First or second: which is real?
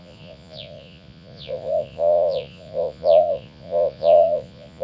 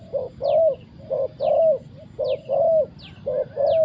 second